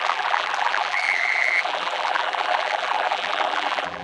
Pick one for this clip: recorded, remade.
remade